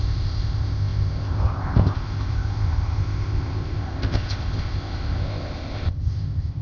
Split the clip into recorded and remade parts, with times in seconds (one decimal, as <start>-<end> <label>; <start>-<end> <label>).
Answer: 0.0-6.6 remade